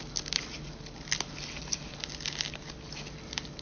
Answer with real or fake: real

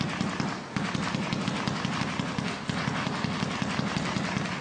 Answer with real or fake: real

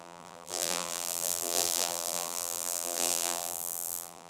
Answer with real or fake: fake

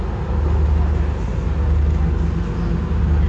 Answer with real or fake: real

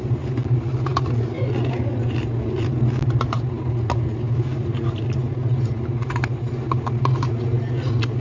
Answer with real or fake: real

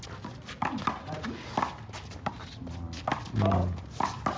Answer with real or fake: real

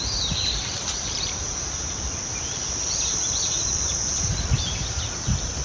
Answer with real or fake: fake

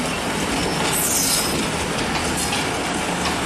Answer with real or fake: real